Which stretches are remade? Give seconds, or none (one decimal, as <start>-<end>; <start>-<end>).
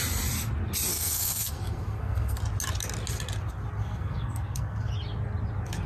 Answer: 0.9-2.4; 3.8-4.9